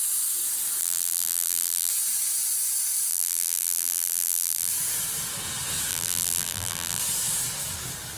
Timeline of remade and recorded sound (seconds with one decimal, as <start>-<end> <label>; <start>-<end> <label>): 0.0-0.8 recorded; 0.8-1.9 remade; 1.9-3.1 recorded; 3.1-4.7 remade; 4.7-5.9 recorded; 5.9-7.0 remade; 7.0-8.2 recorded